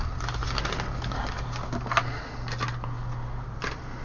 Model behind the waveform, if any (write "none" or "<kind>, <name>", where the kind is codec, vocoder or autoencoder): none